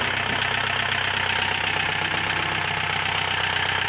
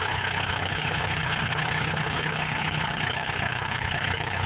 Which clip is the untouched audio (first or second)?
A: first